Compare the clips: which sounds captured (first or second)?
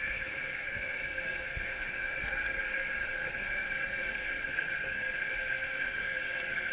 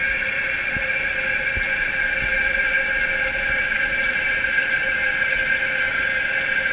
second